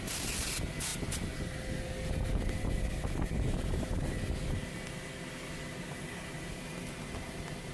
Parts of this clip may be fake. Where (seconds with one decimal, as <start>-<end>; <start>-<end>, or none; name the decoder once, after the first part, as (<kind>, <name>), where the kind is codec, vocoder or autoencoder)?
none